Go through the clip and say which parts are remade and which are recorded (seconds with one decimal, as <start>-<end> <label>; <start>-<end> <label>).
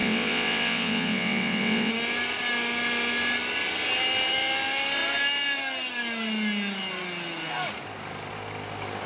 0.0-1.9 remade; 1.9-9.1 recorded